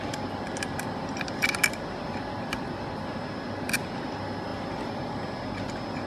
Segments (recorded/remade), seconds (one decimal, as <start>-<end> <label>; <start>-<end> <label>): 0.0-4.5 recorded; 4.5-5.2 remade; 5.2-6.1 recorded